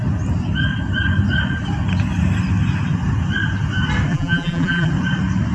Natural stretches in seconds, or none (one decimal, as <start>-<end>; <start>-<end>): 0.0-4.1; 4.9-5.5